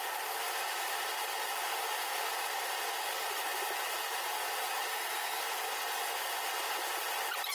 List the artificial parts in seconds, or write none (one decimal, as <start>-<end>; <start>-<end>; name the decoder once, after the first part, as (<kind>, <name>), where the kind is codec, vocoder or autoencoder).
4.9-5.4 (codec, SNAC)